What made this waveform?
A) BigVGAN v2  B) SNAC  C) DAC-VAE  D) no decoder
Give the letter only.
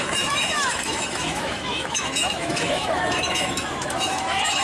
C